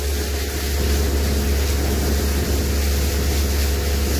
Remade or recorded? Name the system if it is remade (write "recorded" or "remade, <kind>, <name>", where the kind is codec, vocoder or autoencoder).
recorded